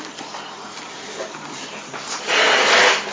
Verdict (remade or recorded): recorded